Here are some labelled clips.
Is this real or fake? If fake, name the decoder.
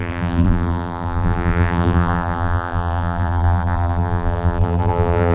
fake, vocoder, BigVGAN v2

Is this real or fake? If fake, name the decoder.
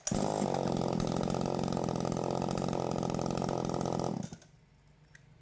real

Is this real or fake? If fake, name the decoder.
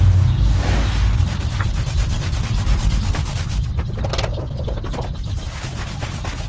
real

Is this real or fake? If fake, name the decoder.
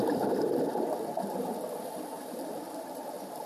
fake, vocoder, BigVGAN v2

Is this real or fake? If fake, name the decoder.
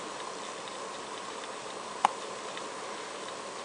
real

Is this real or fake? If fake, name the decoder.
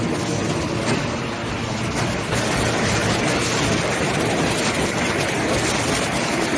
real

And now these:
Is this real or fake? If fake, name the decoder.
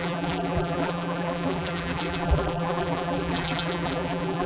fake, vocoder, BigVGAN v2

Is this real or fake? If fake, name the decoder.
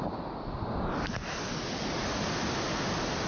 real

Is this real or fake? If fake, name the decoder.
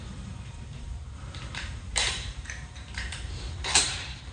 fake, vocoder, BigVGAN v2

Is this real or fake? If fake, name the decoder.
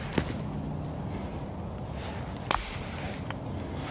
real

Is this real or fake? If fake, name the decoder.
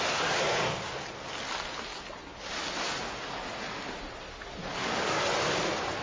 real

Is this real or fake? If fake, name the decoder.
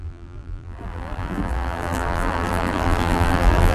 fake, vocoder, BigVGAN v2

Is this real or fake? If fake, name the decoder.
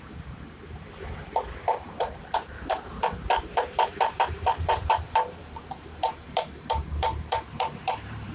fake, vocoder, BigVGAN v2